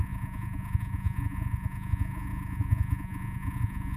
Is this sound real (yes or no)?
no